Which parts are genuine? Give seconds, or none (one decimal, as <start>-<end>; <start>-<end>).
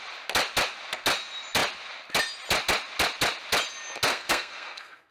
0.0-4.1